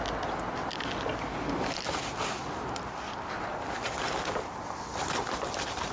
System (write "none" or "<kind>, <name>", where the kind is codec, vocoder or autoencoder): none